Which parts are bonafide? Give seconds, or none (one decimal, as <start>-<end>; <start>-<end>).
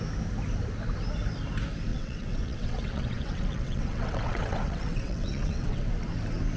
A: 0.0-1.9; 5.9-6.6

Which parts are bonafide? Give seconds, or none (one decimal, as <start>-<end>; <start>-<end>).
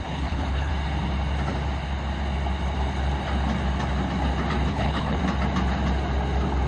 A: 0.7-4.7; 5.2-6.7